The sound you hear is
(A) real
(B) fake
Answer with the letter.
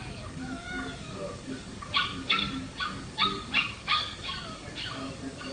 B